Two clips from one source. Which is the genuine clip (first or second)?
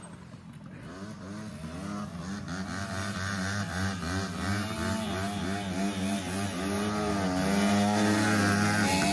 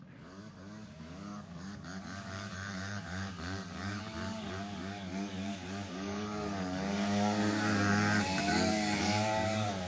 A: first